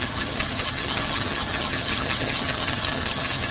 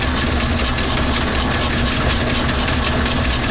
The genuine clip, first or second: second